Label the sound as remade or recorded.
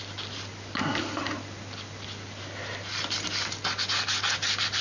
recorded